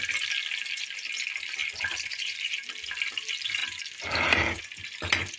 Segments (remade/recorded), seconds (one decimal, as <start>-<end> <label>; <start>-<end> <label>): 0.0-1.6 recorded; 1.6-3.1 remade; 3.1-3.6 recorded; 3.6-4.6 remade; 4.6-5.4 recorded